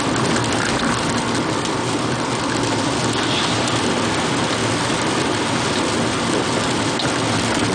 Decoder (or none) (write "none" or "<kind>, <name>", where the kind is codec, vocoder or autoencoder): none